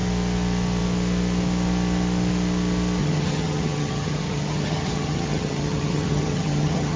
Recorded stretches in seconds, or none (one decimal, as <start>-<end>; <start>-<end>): 0.0-3.0